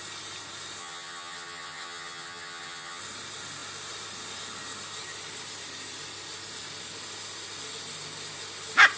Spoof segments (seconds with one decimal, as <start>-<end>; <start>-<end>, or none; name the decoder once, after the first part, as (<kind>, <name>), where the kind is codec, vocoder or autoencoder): 0.8-3.0 (vocoder, HiFi-GAN)